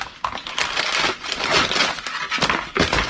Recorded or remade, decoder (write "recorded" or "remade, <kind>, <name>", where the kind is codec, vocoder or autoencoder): recorded